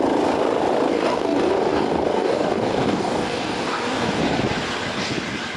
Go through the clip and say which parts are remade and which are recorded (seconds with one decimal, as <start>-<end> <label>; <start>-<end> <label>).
0.0-0.9 recorded; 0.9-4.2 remade; 4.2-5.6 recorded